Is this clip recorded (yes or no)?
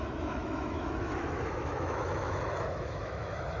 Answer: no